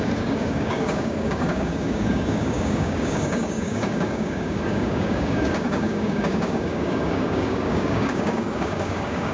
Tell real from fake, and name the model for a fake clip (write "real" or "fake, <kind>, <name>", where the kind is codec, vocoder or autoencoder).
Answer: fake, codec, DAC